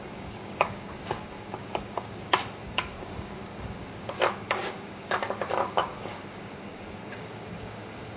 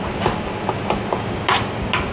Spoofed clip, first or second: first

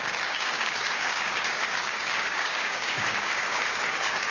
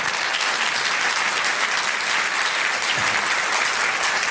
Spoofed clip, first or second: first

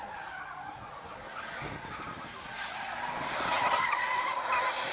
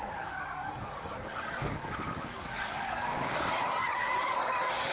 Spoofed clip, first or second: second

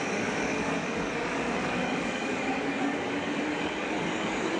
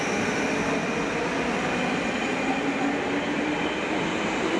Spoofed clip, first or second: first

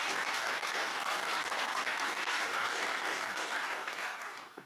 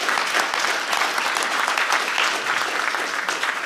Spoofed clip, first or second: first